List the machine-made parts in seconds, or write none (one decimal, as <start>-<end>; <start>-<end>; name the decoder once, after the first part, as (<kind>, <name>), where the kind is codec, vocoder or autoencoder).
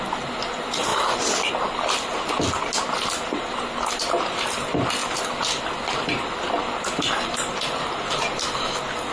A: 0.9-1.5 (vocoder, BigVGAN v2)